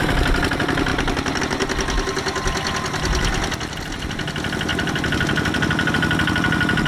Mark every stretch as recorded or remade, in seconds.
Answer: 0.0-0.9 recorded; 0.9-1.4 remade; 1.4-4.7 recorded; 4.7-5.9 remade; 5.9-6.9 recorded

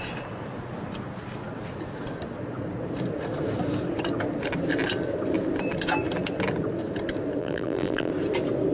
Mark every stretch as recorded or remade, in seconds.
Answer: 0.0-7.4 recorded; 7.4-8.1 remade; 8.1-8.7 recorded

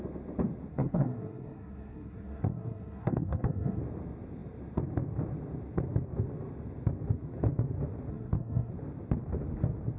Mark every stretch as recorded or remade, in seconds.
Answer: 0.0-0.7 recorded; 0.7-3.8 remade; 3.8-8.1 recorded; 8.1-8.7 remade; 8.7-10.0 recorded

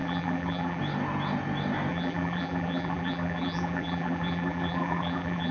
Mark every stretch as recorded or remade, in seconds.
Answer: 0.0-0.8 remade; 0.8-1.9 recorded; 1.9-5.5 remade